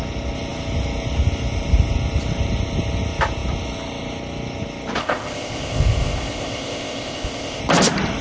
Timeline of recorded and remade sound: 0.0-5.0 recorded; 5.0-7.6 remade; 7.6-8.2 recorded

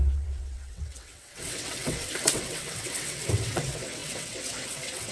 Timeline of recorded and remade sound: 0.0-5.1 remade

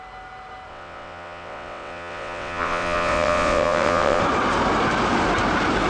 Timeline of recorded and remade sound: 0.0-0.7 recorded; 0.7-4.2 remade; 4.2-5.9 recorded

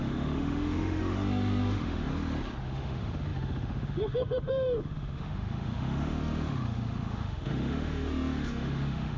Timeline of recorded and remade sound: 0.0-2.1 remade; 2.1-2.6 recorded; 2.6-9.2 remade

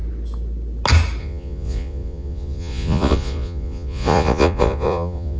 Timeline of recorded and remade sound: 0.0-1.2 recorded; 1.2-5.4 remade

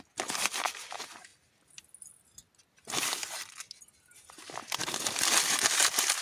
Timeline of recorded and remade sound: 0.0-6.2 recorded

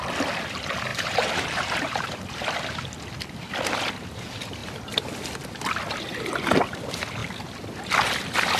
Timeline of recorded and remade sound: 0.0-0.9 recorded; 0.9-2.4 remade; 2.4-8.6 recorded

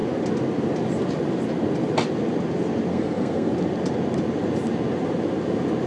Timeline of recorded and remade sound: 0.0-2.9 recorded; 2.9-3.5 remade; 3.5-5.9 recorded